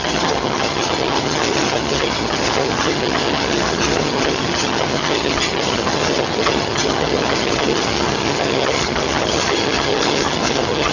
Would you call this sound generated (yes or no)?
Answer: yes